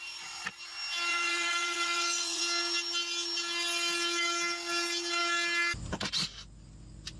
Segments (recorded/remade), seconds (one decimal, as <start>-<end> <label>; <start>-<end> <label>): 0.0-1.1 recorded; 1.1-2.4 remade; 2.4-7.2 recorded